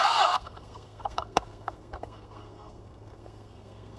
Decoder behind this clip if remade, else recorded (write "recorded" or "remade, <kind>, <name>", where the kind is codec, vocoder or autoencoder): remade, codec, SNAC